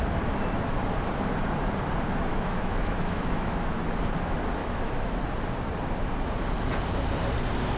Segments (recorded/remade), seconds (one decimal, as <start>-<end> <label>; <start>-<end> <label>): 0.0-2.3 recorded; 2.3-3.8 remade; 3.8-4.6 recorded; 4.6-5.2 remade; 5.2-7.8 recorded